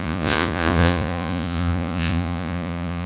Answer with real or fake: fake